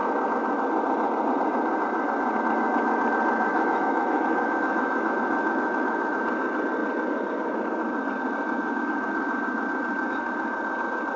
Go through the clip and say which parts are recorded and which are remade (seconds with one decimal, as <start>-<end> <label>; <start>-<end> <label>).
0.0-3.5 recorded; 3.5-6.2 remade; 6.2-11.2 recorded